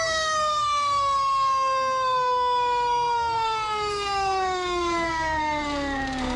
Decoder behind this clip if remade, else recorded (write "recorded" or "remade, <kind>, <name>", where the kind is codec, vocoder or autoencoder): remade, codec, SNAC